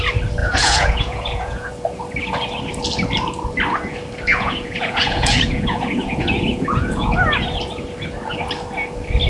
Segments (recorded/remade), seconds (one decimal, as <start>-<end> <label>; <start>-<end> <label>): 0.0-0.4 recorded; 0.4-1.7 remade; 1.7-4.3 recorded; 4.3-7.1 remade; 7.1-9.3 recorded